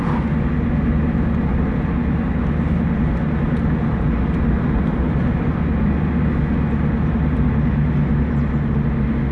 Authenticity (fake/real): real